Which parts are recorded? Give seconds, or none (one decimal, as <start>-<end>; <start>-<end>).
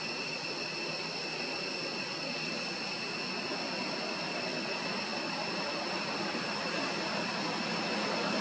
0.0-8.4